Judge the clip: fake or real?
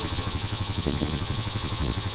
fake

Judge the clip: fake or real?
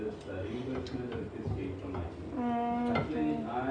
real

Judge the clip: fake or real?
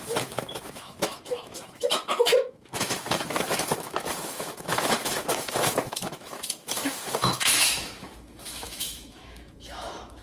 fake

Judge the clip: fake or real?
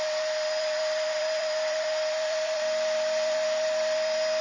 fake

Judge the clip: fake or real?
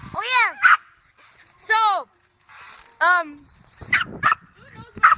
real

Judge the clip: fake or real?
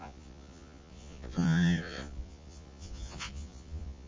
fake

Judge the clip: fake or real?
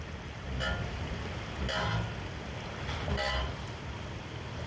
real